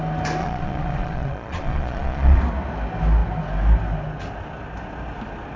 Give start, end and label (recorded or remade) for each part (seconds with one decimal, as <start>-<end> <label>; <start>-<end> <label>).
0.0-0.4 recorded; 0.4-2.4 remade; 2.4-5.6 recorded